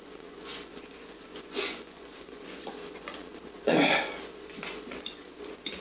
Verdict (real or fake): fake